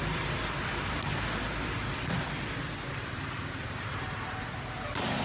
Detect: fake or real real